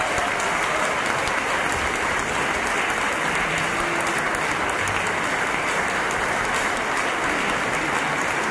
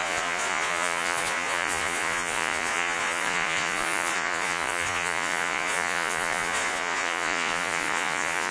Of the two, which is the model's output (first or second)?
second